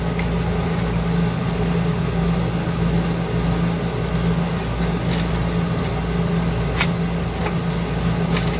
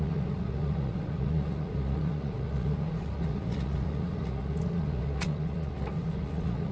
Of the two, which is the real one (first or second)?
first